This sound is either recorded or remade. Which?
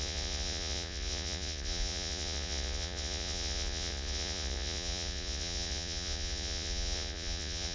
remade